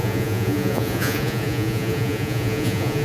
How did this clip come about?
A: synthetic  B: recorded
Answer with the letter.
A